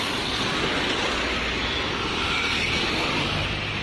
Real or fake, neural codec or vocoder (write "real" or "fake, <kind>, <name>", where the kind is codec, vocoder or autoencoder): real